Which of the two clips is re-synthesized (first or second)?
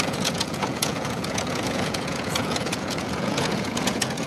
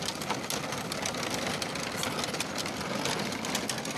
first